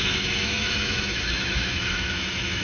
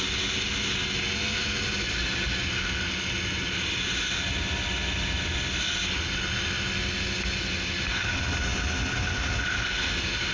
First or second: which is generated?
first